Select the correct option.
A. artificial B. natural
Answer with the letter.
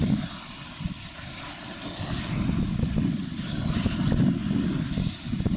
B